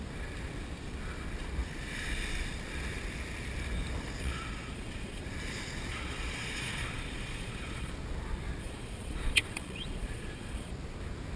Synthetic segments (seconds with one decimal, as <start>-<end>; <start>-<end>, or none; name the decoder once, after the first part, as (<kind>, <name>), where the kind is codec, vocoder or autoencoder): 4.2-5.2 (vocoder, Vocos); 5.9-7.9; 8.6-10.7